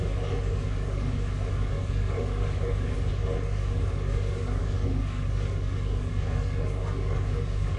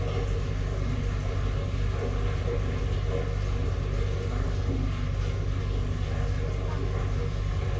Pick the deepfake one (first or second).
first